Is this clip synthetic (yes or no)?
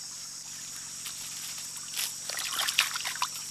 no